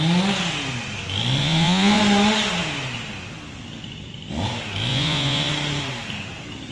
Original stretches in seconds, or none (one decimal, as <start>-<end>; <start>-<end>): 0.0-1.4; 2.0-4.9; 5.5-6.7